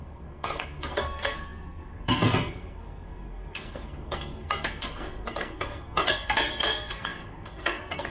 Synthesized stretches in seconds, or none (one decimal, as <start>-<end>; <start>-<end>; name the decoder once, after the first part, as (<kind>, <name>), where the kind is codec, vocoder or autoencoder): 0.0-8.1 (codec, SNAC)